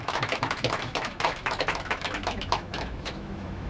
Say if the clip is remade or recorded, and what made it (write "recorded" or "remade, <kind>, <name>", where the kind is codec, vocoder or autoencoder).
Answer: remade, autoencoder, DAC-VAE